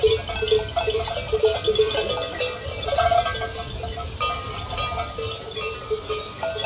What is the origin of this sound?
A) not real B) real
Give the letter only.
B